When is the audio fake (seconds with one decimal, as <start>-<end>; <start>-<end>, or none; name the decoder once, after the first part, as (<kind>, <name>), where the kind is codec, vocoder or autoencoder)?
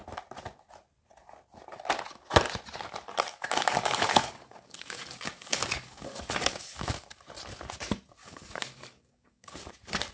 3.3-7.2 (codec, DAC); 8.2-9.7